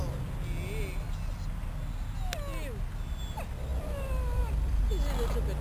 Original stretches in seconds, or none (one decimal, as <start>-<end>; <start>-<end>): 0.0-3.7; 4.8-5.6